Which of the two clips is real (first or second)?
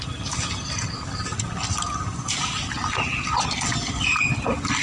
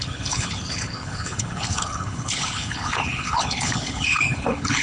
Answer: first